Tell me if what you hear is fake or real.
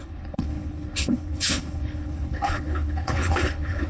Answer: fake